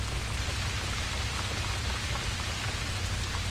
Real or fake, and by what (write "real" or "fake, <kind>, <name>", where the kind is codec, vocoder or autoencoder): real